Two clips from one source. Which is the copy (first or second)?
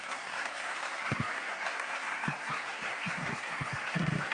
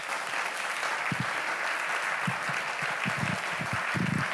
first